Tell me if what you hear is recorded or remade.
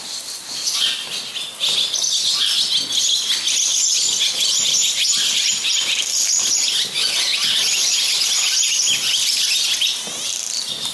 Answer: recorded